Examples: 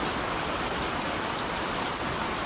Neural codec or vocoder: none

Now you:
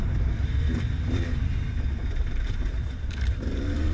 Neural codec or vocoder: vocoder, BigVGAN v2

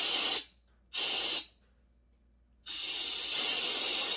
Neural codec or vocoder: none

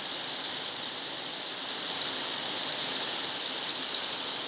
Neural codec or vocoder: none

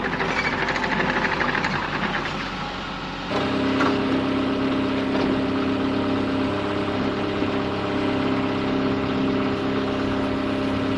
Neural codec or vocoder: none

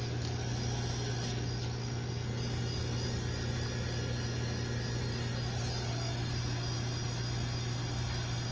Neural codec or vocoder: none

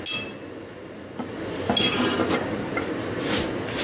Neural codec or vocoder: none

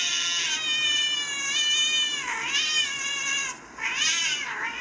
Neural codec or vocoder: none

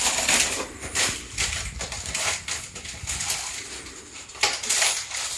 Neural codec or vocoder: vocoder, BigVGAN v2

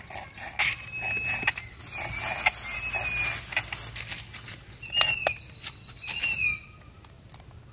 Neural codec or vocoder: none